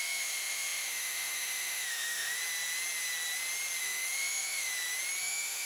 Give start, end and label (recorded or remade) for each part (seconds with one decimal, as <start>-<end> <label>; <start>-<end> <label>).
0.0-2.4 remade; 2.4-3.8 recorded; 3.8-4.7 remade; 4.7-5.2 recorded; 5.2-5.7 remade